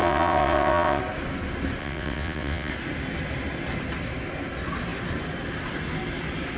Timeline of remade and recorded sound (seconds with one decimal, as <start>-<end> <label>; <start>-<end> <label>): 0.0-1.0 remade; 1.0-1.8 recorded; 1.8-2.7 remade; 2.7-6.6 recorded